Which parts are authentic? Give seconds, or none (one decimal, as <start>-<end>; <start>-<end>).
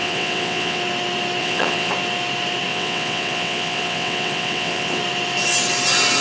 0.8-1.4; 1.9-2.7; 5.0-6.2